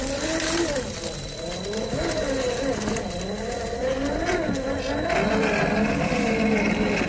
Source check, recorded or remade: recorded